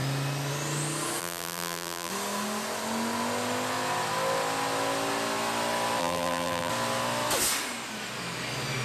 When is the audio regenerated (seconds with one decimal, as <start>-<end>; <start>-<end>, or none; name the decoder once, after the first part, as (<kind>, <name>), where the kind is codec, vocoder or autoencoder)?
1.2-2.1 (vocoder, BigVGAN v2); 6.0-6.7